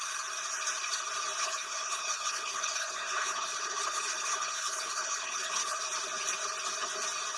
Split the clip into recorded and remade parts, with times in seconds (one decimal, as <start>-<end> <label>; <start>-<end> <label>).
0.0-1.4 recorded; 1.4-5.8 remade; 5.8-7.4 recorded

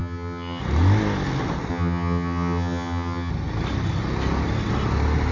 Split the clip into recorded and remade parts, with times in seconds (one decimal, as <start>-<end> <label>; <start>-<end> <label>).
0.0-0.6 remade; 0.6-1.7 recorded; 1.7-3.3 remade; 3.3-5.3 recorded

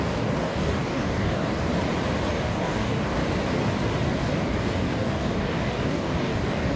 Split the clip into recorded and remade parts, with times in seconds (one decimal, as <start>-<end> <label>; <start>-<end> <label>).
0.0-1.7 remade; 1.7-2.3 recorded; 2.3-3.2 remade; 3.2-4.2 recorded; 4.2-6.8 remade

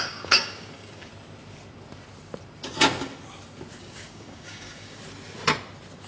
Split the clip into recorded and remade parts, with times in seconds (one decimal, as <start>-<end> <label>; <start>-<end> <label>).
0.0-1.1 remade; 1.1-3.8 recorded; 3.8-5.0 remade; 5.0-6.1 recorded

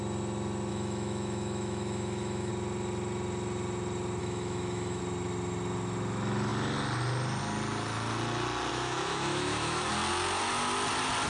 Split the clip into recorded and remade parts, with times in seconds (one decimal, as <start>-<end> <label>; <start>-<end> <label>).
0.0-0.7 recorded; 0.7-2.5 remade; 2.5-4.2 recorded; 4.2-5.0 remade; 5.0-8.7 recorded; 8.7-9.9 remade; 9.9-11.3 recorded

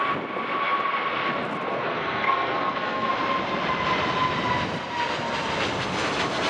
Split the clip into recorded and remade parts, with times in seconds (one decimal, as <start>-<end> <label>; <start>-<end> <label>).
0.0-1.8 recorded; 1.8-3.1 remade; 3.1-6.5 recorded

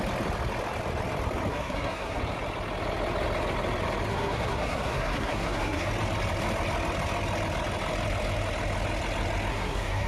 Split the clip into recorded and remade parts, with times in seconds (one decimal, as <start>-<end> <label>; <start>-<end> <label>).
0.0-1.5 recorded; 1.5-2.2 remade; 2.2-4.1 recorded; 4.1-5.9 remade; 5.9-9.5 recorded; 9.5-10.1 remade

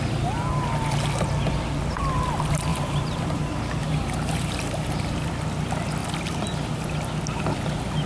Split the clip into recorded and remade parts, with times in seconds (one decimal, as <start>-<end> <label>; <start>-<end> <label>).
0.0-2.7 recorded; 2.7-3.4 remade; 3.4-3.8 recorded; 3.8-5.3 remade; 5.3-8.1 recorded